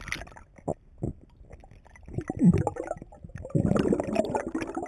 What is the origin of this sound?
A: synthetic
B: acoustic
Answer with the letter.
B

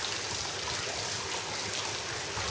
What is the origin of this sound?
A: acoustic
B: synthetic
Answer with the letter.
A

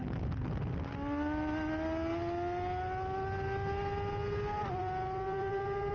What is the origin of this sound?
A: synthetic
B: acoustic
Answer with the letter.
B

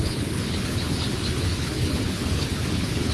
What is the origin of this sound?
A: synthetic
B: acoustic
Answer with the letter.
A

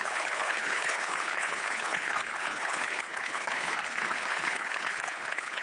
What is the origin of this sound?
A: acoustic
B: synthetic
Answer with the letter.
B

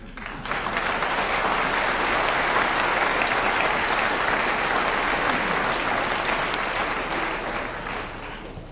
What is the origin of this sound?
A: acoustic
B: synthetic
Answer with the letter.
A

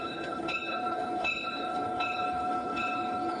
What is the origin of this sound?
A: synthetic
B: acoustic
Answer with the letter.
A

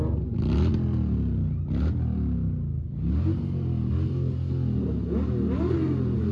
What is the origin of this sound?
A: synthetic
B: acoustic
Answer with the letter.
B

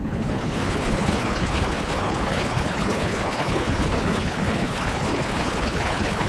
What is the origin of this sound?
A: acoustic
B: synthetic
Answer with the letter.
B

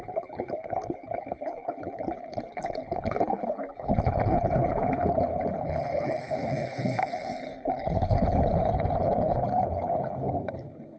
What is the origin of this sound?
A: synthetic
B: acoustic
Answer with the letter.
A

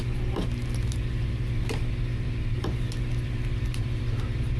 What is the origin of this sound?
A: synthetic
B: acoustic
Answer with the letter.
B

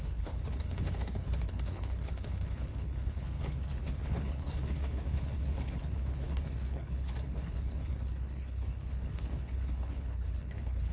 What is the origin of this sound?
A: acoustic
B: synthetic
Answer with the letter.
B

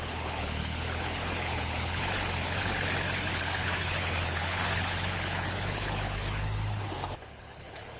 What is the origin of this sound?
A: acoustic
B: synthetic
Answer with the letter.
B